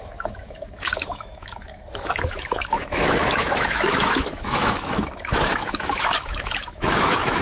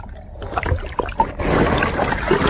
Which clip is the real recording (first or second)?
second